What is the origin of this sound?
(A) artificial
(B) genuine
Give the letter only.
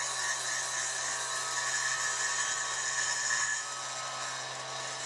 B